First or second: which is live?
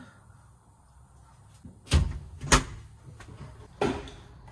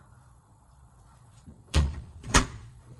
first